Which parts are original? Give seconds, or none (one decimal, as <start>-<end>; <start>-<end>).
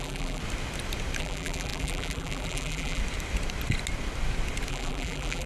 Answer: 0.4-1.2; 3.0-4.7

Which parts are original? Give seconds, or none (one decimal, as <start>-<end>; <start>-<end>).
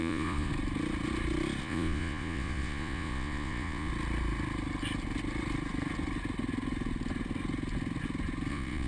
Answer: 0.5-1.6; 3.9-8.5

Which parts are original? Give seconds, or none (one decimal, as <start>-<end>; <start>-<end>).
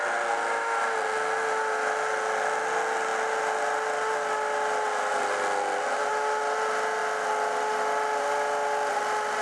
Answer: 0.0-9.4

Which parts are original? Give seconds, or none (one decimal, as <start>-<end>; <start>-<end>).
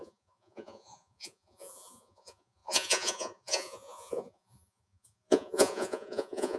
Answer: none